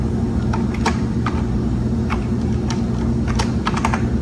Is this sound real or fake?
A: real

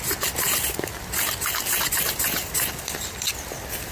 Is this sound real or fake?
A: real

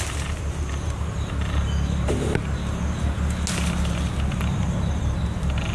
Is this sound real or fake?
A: real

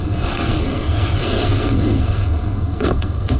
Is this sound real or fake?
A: fake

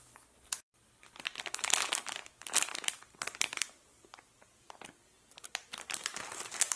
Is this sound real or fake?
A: real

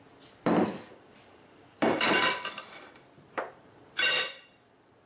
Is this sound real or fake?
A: fake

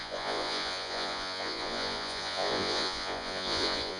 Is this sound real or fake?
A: fake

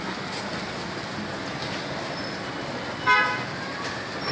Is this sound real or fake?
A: real